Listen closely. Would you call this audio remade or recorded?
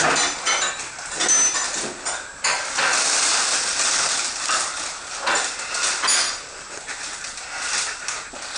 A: recorded